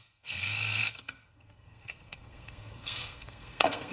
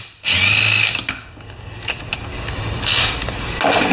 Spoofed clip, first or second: first